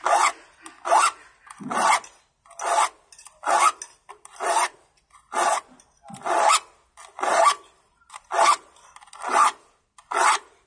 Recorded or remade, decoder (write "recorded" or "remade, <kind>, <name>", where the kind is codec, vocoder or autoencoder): recorded